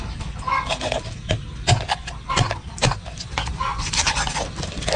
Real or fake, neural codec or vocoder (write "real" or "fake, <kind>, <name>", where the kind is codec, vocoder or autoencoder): real